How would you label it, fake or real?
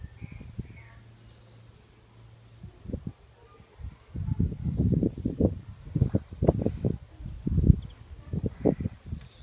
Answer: real